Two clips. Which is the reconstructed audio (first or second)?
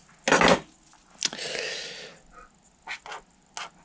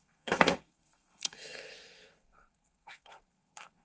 second